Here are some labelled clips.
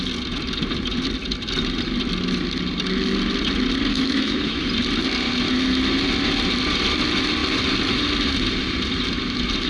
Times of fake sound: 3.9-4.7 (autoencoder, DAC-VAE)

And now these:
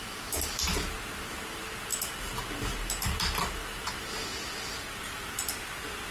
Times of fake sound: none

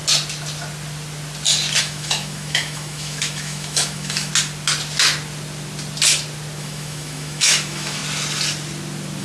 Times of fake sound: 1.8-4.3 (autoencoder, DAC-VAE); 6.6-8.0

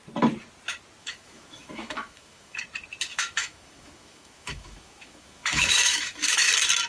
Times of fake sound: 1.0-2.6 (autoencoder, DAC-VAE); 3.1-6.5

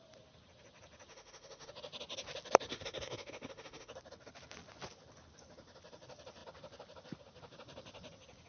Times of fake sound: 1.1-1.7 (autoencoder, DAC-VAE); 2.7-3.9

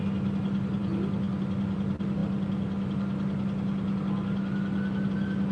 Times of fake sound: none

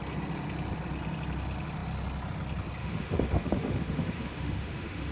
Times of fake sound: 2.8-5.1 (autoencoder, DAC-VAE)